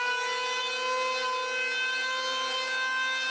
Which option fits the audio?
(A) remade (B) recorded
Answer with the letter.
B